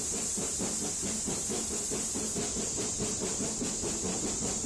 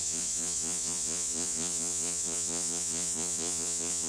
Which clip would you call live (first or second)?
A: first